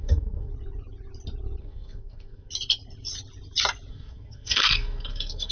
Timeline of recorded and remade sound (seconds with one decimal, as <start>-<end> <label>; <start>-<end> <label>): 0.0-0.5 remade; 0.5-1.6 recorded; 1.6-2.5 remade; 2.5-3.9 recorded; 3.9-5.5 remade